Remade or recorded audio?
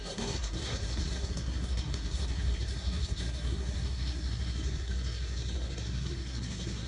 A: remade